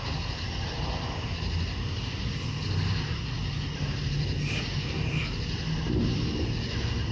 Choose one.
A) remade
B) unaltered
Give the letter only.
B